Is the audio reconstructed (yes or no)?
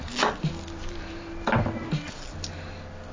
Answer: no